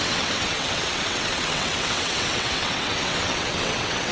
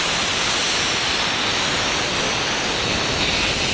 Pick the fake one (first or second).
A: first